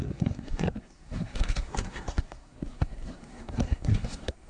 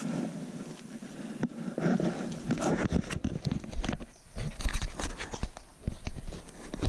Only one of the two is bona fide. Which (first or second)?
second